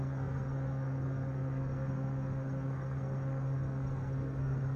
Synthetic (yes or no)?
yes